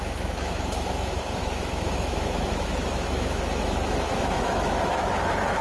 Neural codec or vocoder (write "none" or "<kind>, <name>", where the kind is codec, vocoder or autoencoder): autoencoder, DAC-VAE